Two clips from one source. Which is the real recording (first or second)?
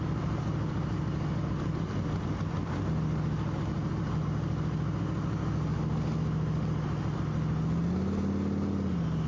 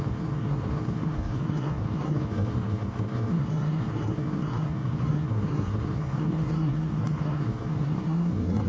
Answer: first